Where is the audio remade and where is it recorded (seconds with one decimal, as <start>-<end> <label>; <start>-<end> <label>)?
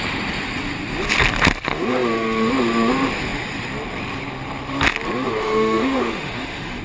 0.0-5.4 recorded; 5.4-6.8 remade